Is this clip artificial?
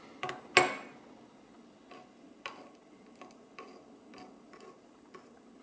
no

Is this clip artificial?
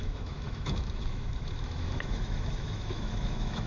yes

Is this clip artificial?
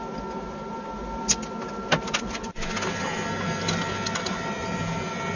no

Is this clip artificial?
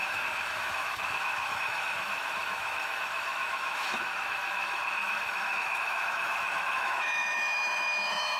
yes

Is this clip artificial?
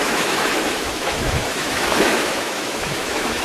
yes